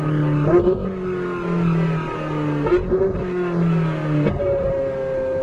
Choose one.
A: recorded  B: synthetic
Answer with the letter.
A